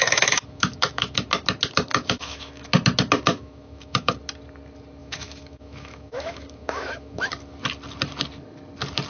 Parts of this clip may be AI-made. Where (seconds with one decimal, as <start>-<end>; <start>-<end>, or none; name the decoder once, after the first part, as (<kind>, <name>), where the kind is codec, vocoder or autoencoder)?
0.0-1.2 (autoencoder, DAC-VAE); 1.9-2.7; 3.3-4.1; 5.0-7.3